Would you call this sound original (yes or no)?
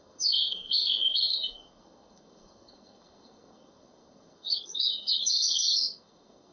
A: no